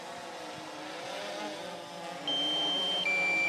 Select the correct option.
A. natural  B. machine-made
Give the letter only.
A